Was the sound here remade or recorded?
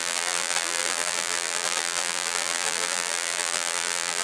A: remade